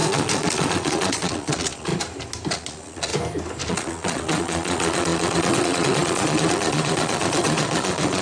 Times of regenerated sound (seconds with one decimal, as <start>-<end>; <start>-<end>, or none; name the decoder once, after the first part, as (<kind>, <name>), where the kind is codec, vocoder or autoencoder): 0.0-1.9 (vocoder, Vocos); 2.5-3.1; 3.7-8.2